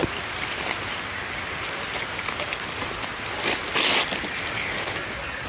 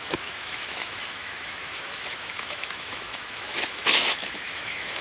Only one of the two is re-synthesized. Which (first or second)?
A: second